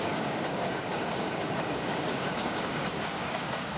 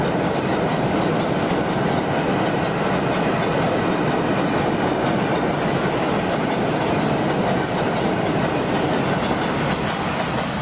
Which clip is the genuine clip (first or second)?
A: second